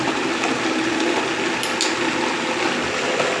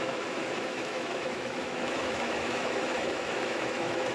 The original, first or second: first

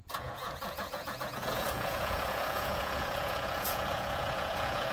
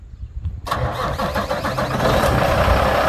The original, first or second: second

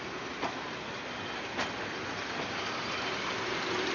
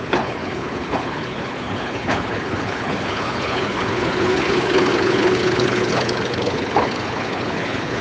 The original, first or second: first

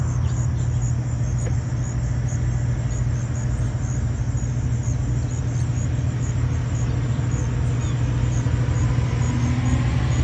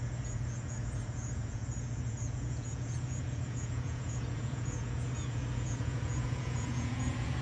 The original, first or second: first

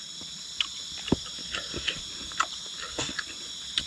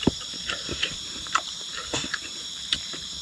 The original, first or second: first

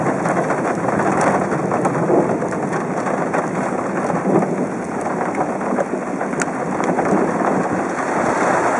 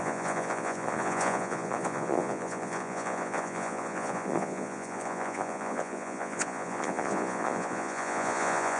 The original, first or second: first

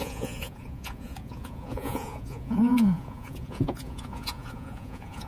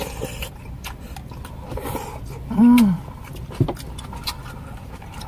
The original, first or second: second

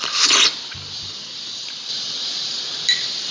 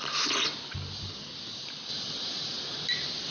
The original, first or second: second